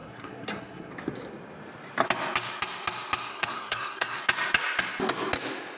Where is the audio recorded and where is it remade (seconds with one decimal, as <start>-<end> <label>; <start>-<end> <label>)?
0.0-0.9 remade; 0.9-3.3 recorded; 3.3-4.2 remade; 4.2-5.8 recorded